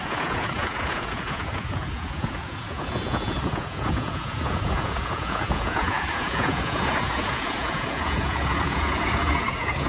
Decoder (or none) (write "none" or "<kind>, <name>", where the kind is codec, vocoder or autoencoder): vocoder, Vocos